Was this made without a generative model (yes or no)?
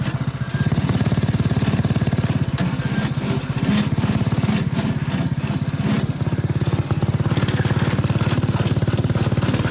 yes